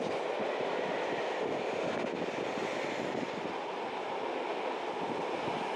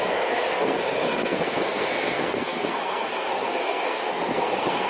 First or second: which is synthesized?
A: second